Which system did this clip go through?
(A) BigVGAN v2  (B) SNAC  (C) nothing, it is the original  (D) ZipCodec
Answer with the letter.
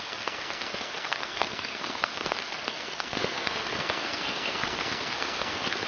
B